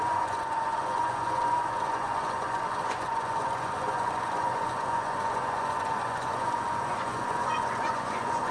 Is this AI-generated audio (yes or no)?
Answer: yes